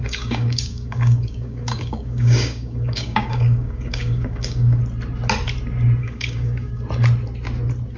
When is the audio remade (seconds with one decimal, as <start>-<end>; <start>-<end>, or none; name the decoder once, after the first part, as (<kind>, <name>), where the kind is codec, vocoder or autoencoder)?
0.0-4.8 (codec, DAC); 6.0-6.8